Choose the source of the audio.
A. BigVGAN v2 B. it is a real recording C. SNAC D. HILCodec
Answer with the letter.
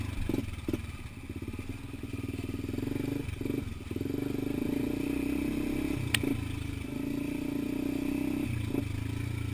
B